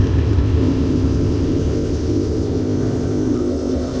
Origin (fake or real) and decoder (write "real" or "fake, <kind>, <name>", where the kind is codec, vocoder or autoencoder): fake, codec, ZipCodec